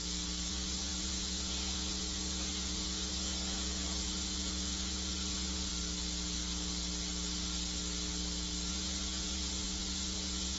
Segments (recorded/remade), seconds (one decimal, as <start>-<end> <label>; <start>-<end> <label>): 0.0-0.5 recorded; 0.5-5.7 remade; 5.7-8.7 recorded; 8.7-10.6 remade